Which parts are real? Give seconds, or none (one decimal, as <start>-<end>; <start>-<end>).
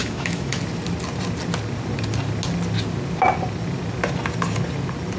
0.6-5.2